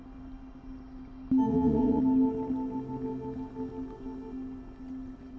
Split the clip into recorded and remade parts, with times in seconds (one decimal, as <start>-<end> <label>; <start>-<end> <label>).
0.0-1.5 recorded; 1.5-2.0 remade; 2.0-5.4 recorded

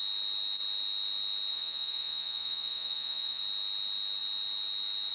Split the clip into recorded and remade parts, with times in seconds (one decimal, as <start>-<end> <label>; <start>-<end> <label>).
0.0-1.5 recorded; 1.5-3.4 remade; 3.4-5.1 recorded

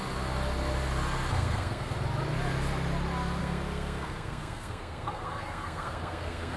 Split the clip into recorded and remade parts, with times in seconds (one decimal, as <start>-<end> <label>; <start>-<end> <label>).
0.0-1.3 recorded; 1.3-1.9 remade; 1.9-3.4 recorded; 3.4-6.6 remade

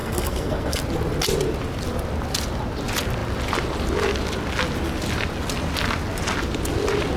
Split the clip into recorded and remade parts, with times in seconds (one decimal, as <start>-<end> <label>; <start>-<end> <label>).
0.0-0.8 remade; 0.8-7.2 recorded